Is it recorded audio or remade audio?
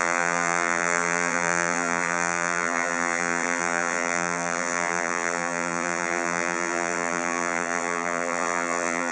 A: remade